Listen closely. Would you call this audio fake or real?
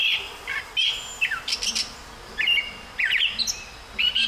real